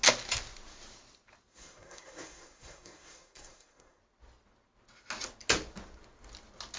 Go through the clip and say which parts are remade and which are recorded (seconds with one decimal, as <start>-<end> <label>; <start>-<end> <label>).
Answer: 0.0-1.5 recorded; 1.5-4.0 remade; 4.0-6.8 recorded